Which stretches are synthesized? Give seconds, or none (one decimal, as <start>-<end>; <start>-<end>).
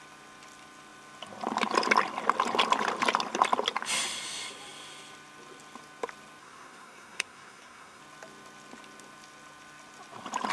6.4-8.0